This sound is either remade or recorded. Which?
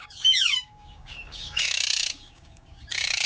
remade